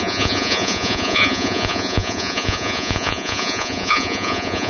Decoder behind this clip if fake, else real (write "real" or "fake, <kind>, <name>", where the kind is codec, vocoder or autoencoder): fake, vocoder, Vocos